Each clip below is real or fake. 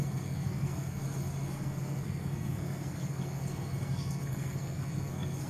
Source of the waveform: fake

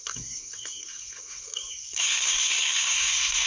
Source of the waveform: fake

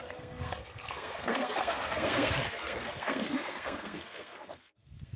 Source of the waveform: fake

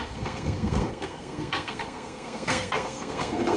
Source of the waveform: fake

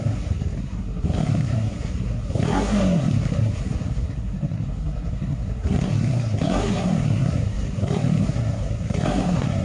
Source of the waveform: fake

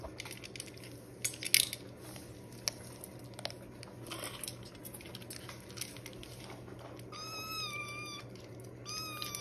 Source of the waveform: real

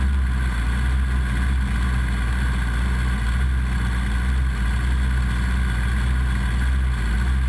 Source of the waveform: real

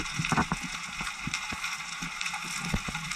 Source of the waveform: real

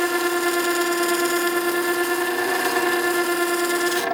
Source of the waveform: real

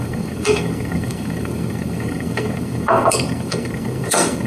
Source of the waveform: fake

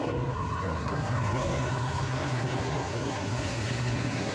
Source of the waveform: fake